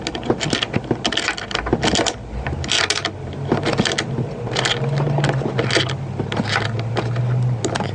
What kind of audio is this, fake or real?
real